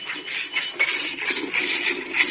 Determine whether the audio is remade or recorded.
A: recorded